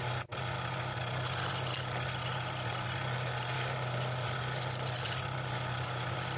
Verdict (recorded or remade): recorded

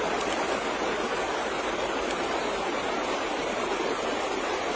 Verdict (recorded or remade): recorded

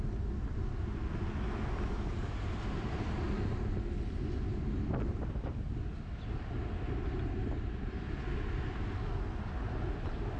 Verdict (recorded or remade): recorded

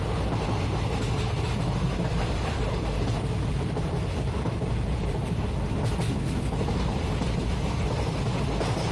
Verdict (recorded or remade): recorded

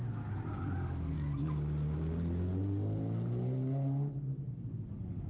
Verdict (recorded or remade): recorded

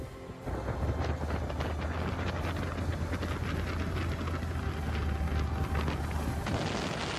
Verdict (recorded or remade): recorded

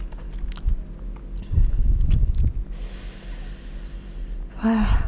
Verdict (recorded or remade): recorded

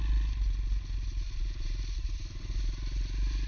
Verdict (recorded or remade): recorded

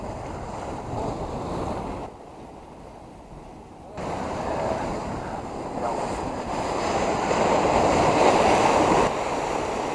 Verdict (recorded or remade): recorded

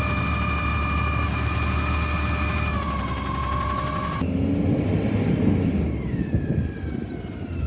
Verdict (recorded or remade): recorded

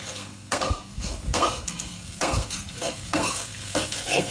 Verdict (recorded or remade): remade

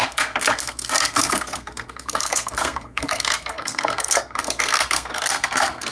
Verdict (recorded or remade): remade